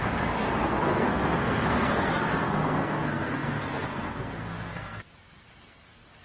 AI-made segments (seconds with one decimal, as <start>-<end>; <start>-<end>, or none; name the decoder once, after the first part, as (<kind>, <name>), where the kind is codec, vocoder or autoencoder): 0.0-6.2 (codec, SNAC)